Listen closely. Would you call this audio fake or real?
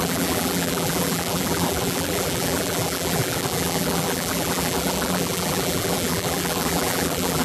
fake